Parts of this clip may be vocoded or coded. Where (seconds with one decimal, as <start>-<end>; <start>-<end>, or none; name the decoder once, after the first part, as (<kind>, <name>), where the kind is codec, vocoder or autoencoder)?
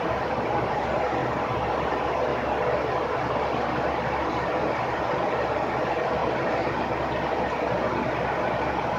6.2-7.3 (vocoder, BigVGAN v2)